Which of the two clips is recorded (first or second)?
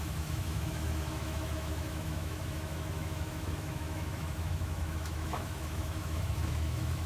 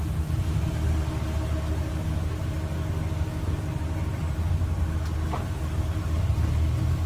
second